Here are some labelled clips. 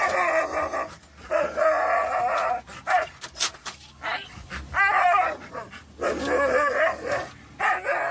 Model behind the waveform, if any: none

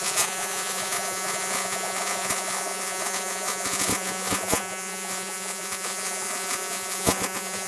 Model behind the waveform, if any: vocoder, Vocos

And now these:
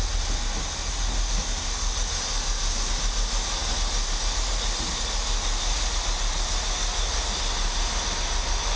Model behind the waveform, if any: none